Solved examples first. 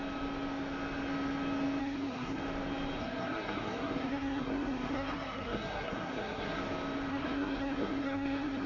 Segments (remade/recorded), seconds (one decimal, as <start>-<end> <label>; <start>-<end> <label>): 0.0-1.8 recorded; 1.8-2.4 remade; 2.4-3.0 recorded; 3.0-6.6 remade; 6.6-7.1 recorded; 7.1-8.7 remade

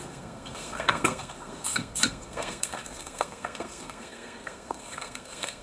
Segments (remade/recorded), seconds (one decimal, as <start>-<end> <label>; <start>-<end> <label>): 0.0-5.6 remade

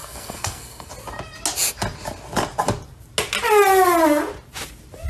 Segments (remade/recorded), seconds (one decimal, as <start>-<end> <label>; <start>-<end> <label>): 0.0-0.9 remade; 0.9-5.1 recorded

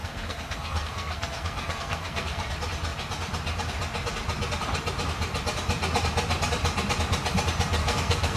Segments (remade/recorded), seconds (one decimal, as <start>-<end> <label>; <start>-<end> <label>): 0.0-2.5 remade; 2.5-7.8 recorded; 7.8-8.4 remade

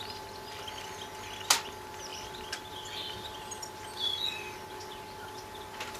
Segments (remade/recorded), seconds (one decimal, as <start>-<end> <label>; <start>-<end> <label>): 0.0-6.0 recorded